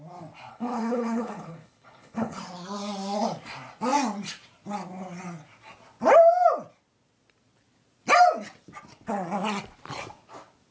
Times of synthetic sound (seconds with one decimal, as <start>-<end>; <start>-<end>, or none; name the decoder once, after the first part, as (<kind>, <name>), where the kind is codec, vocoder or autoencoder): 0.5-2.4 (codec, HILCodec)